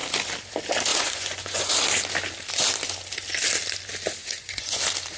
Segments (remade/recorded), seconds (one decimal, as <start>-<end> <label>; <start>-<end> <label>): 0.0-0.9 recorded; 0.9-1.7 remade; 1.7-4.2 recorded; 4.2-4.8 remade; 4.8-5.2 recorded